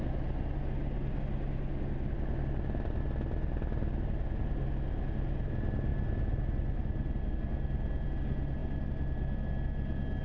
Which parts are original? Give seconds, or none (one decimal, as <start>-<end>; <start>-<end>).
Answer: 0.0-10.2